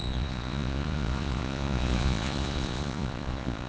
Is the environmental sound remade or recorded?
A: remade